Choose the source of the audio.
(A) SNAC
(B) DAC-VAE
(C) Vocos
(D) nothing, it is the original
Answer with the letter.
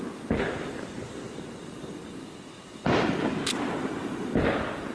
D